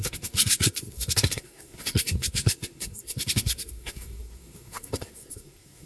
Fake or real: fake